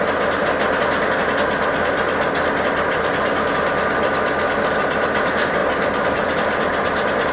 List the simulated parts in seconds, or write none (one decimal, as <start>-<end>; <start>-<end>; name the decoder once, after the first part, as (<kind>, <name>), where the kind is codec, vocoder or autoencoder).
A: 0.0-0.4 (vocoder, BigVGAN v2); 4.8-7.3